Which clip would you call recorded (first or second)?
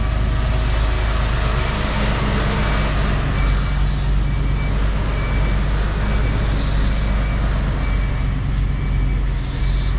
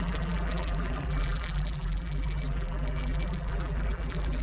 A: first